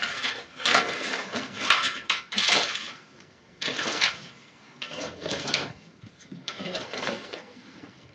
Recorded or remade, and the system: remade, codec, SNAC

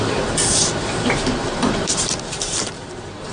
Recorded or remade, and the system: remade, vocoder, BigVGAN v2